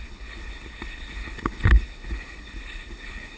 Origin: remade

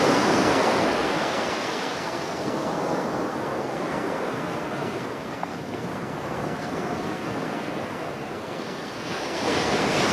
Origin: remade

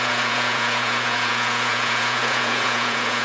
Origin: remade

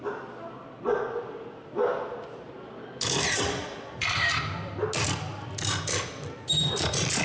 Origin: recorded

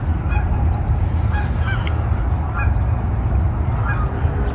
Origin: recorded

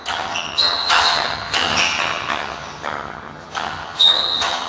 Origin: remade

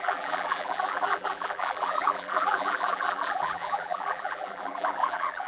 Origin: remade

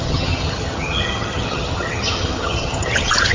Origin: remade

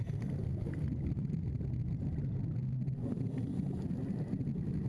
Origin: recorded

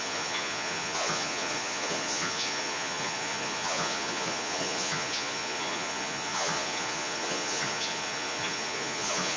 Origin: remade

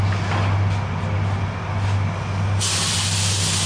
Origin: recorded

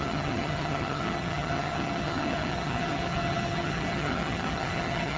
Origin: remade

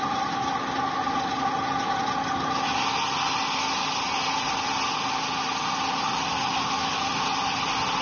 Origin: recorded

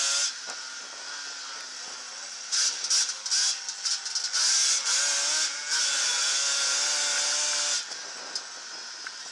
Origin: recorded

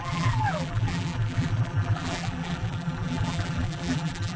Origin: remade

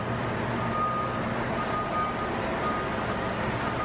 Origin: recorded